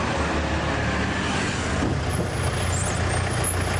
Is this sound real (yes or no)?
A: yes